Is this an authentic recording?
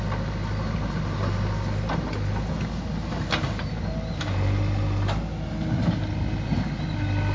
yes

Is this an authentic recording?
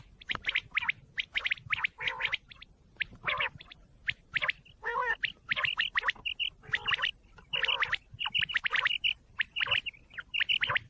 yes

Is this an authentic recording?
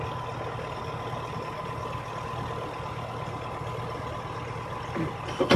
yes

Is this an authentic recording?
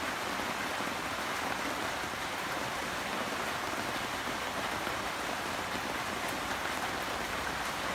yes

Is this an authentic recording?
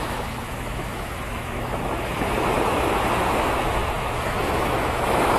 no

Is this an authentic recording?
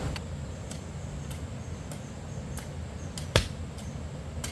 yes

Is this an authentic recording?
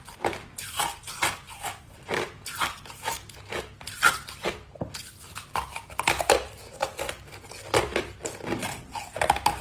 yes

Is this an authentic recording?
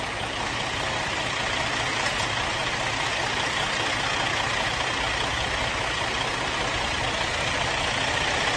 yes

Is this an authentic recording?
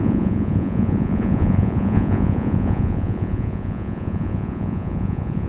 no